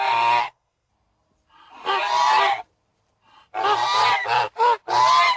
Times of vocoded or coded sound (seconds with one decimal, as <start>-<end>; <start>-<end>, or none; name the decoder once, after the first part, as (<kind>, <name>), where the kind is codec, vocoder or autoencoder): 0.4-0.9 (codec, SNAC)